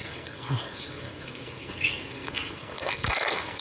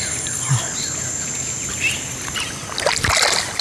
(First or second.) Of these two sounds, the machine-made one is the first